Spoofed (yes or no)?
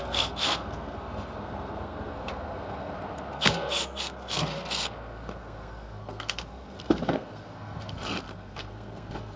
yes